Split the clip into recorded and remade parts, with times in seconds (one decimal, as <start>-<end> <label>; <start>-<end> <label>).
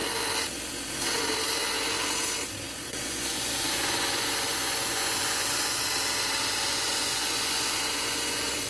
0.0-2.9 recorded; 2.9-5.8 remade; 5.8-6.5 recorded; 6.5-8.7 remade